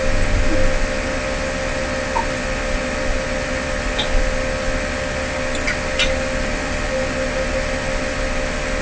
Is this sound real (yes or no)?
yes